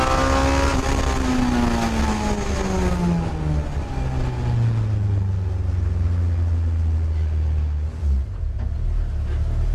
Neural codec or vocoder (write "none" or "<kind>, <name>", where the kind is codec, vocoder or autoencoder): none